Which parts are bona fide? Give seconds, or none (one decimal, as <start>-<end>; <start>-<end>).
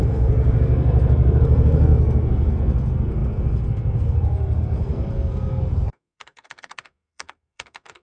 none